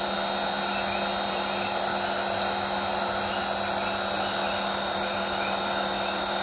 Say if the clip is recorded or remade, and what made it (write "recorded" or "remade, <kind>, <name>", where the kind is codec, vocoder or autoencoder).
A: recorded